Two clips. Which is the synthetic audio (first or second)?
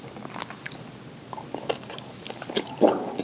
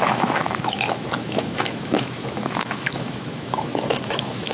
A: second